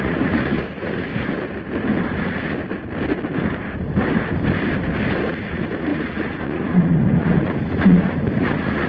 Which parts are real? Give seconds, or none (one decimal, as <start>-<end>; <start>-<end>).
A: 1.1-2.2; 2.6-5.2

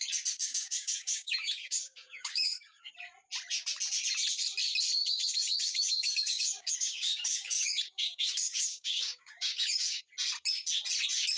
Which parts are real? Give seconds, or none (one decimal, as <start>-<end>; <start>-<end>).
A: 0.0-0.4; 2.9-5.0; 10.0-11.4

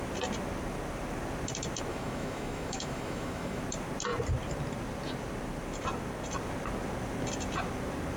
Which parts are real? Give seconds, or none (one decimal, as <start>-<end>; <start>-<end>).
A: 0.0-1.9; 3.6-8.2